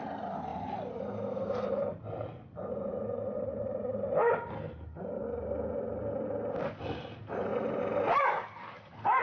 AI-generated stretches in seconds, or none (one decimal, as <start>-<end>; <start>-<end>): 0.5-4.6; 7.5-9.2